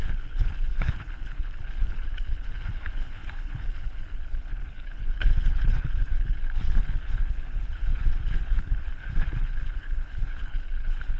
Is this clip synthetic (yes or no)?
yes